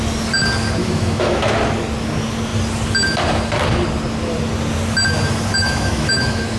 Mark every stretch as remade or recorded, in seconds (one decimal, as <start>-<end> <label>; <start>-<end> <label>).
0.0-0.8 recorded; 0.8-1.5 remade; 1.5-5.5 recorded; 5.5-6.6 remade